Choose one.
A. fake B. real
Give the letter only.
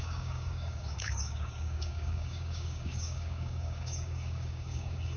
A